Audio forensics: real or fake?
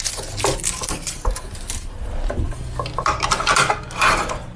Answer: real